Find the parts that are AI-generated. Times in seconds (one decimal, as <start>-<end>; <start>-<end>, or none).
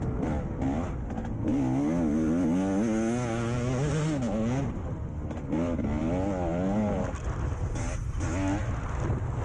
none